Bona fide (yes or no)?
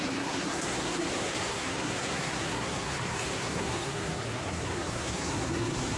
no